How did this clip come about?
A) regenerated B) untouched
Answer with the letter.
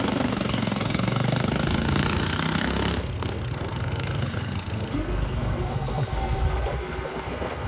A